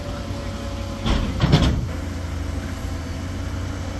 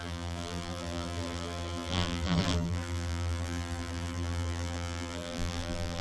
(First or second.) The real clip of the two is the first